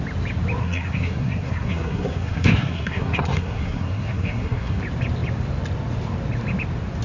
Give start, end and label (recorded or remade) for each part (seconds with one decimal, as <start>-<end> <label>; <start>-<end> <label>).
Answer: 0.0-0.6 recorded; 0.6-4.8 remade; 4.8-7.0 recorded